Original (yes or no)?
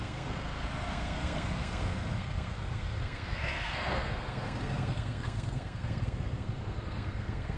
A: no